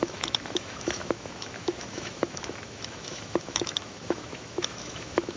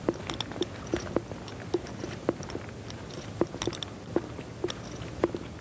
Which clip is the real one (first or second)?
second